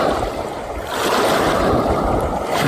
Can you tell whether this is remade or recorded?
recorded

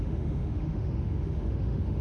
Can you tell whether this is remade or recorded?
remade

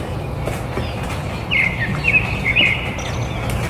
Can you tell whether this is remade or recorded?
recorded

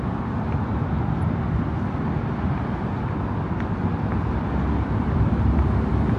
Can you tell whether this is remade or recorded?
recorded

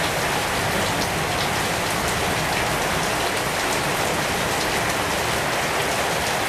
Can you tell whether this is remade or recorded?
recorded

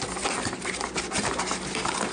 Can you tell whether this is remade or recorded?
recorded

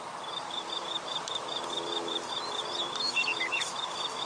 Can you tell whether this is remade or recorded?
remade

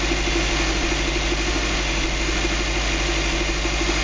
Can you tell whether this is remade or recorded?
recorded